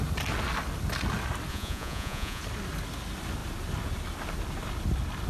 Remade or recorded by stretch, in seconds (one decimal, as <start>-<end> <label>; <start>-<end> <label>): 0.0-1.5 recorded; 1.5-2.4 remade; 2.4-5.3 recorded